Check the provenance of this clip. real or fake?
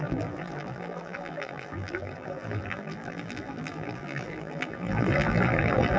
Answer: fake